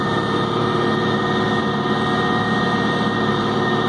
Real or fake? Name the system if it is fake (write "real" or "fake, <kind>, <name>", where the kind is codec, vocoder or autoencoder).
fake, vocoder, BigVGAN v2